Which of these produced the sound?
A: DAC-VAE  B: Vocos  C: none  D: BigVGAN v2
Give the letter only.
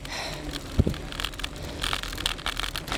C